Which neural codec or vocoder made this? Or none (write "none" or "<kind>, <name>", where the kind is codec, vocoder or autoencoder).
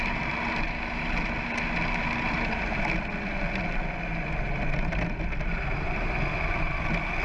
none